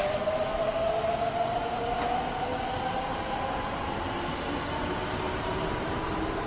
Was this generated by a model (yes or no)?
no